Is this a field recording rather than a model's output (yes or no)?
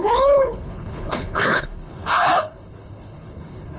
no